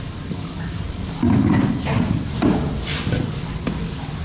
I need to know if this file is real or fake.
real